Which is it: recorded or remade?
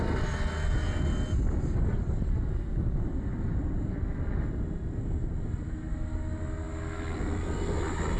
recorded